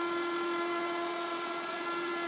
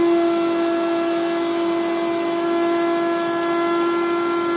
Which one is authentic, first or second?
second